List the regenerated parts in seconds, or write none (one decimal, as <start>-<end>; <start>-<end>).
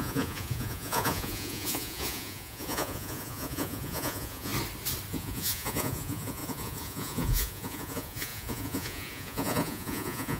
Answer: 0.0-4.5; 5.1-10.4